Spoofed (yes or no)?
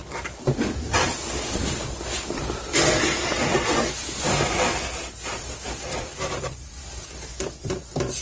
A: yes